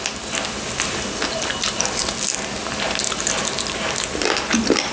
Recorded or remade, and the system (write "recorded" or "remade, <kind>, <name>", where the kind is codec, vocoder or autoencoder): recorded